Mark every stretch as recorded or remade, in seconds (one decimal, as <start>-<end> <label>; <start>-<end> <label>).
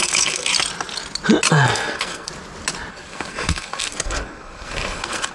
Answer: 0.0-0.5 remade; 0.5-1.5 recorded; 1.5-2.3 remade; 2.3-2.9 recorded; 2.9-5.3 remade